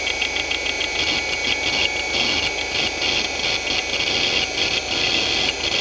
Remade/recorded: recorded